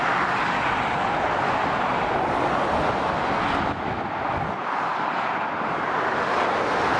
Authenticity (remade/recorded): recorded